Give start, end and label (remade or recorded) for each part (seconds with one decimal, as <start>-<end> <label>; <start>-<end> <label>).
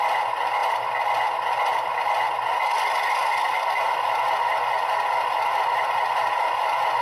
0.0-7.0 recorded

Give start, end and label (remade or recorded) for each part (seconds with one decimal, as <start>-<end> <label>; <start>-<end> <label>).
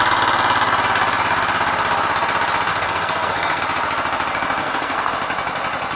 0.0-2.7 recorded; 2.7-3.6 remade; 3.6-4.6 recorded; 4.6-5.1 remade; 5.1-6.0 recorded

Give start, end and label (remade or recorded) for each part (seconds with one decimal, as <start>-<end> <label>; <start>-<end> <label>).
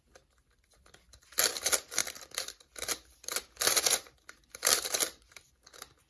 0.0-2.0 recorded; 2.0-5.6 remade; 5.6-6.1 recorded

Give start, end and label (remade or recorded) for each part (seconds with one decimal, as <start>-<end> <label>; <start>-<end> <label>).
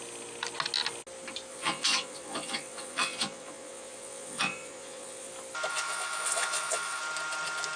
0.0-1.5 recorded; 1.5-5.3 remade; 5.3-5.7 recorded; 5.7-7.0 remade; 7.0-7.8 recorded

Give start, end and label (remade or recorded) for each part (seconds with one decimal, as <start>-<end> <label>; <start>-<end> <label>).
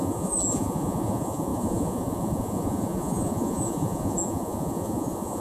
0.0-5.4 remade